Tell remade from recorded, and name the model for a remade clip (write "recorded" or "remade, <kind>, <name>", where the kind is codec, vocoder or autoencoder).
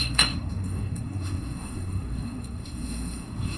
remade, codec, SNAC